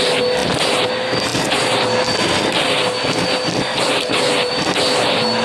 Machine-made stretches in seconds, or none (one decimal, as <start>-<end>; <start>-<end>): none